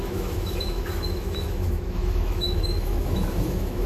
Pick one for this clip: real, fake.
fake